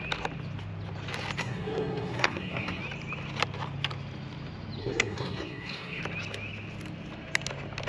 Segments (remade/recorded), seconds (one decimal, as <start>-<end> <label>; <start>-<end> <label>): 0.0-1.4 recorded; 1.4-2.8 remade; 2.8-4.8 recorded; 4.8-6.0 remade; 6.0-7.9 recorded